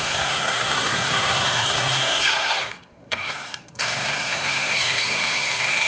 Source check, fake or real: fake